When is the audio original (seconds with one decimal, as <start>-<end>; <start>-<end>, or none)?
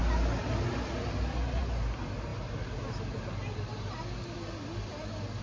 0.0-5.4